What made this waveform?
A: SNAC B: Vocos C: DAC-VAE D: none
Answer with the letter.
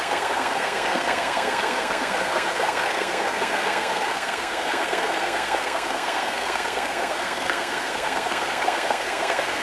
A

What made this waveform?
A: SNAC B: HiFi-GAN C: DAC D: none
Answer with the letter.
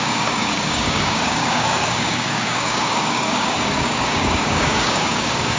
C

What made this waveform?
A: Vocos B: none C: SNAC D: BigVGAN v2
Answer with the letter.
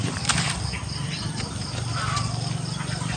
B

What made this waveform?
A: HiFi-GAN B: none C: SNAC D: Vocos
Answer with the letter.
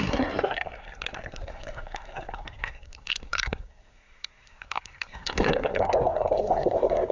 C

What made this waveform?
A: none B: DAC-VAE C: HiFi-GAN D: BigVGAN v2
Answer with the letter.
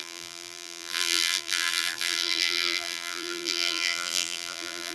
D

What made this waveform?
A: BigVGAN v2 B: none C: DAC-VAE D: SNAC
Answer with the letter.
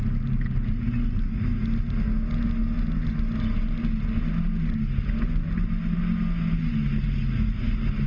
B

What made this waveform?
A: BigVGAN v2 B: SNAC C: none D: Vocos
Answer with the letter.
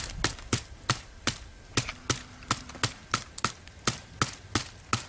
C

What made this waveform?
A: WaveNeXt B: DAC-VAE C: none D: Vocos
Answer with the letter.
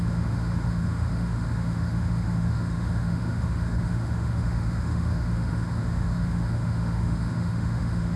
B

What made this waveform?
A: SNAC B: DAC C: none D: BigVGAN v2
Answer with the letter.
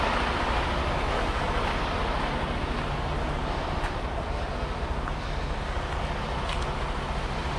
C